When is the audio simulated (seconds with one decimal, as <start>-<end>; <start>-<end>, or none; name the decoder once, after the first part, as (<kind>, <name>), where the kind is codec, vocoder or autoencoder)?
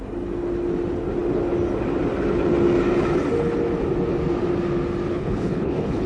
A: 5.1-6.1 (codec, HILCodec)